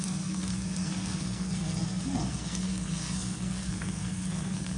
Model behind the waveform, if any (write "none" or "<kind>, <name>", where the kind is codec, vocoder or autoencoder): codec, SNAC